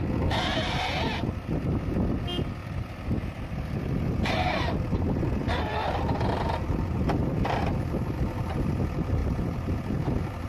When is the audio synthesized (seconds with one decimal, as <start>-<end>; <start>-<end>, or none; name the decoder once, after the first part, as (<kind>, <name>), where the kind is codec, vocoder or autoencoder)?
2.6-7.6 (vocoder, BigVGAN v2); 9.2-10.5